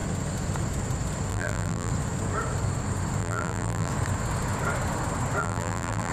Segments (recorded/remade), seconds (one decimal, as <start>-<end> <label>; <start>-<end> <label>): 0.0-1.3 recorded; 1.3-1.9 remade; 1.9-3.2 recorded; 3.2-3.9 remade; 3.9-5.4 recorded; 5.4-6.1 remade